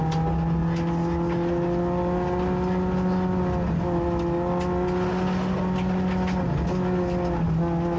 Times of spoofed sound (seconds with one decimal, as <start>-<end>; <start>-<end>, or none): none